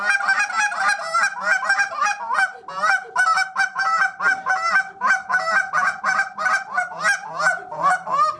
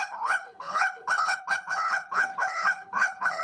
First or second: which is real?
first